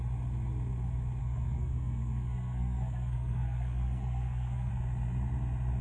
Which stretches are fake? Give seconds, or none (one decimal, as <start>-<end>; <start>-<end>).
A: 1.2-4.7